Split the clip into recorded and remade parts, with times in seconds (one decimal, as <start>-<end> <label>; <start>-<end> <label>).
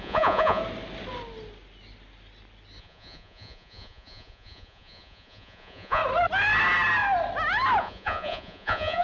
0.0-0.6 remade; 0.6-2.8 recorded; 2.8-6.0 remade; 6.0-7.8 recorded; 7.8-9.0 remade